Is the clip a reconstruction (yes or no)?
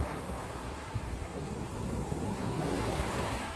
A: yes